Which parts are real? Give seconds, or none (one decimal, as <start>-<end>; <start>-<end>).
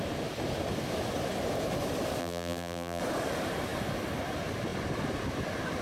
0.0-2.2; 3.0-5.8